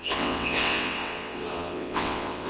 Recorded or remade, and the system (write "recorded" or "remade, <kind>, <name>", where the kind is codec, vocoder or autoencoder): remade, vocoder, WaveNeXt